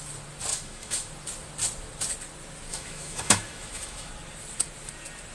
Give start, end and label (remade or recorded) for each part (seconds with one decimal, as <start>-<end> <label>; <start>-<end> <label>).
0.0-0.5 recorded; 0.5-1.1 remade; 1.1-2.7 recorded; 2.7-4.1 remade; 4.1-5.3 recorded